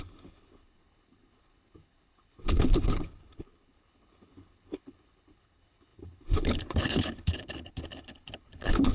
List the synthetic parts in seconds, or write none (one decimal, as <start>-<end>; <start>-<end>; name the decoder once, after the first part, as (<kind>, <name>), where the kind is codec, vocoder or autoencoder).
0.0-8.9 (codec, HILCodec)